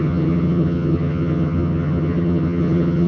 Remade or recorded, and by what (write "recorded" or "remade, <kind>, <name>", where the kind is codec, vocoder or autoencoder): remade, vocoder, HiFi-GAN